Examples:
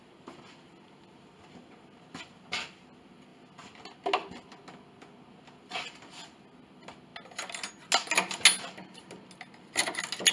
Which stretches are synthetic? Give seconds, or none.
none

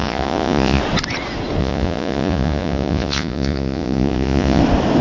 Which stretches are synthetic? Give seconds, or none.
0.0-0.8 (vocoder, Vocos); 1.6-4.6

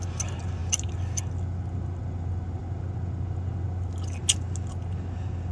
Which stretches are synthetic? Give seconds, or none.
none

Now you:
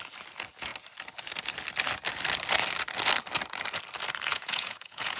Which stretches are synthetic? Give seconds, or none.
4.3-5.2 (vocoder, Vocos)